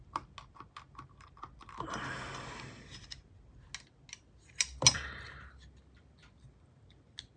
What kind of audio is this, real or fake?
real